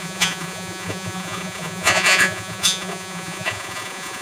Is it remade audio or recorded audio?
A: remade